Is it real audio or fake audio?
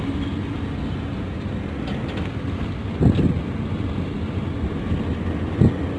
real